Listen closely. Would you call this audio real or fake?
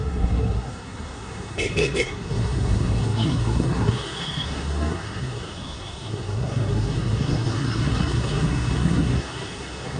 fake